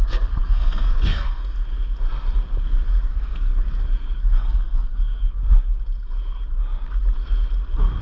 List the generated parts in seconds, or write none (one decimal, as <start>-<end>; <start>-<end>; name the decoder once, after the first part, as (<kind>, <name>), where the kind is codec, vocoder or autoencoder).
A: 0.0-1.4 (codec, SNAC); 3.1-3.5; 4.2-5.4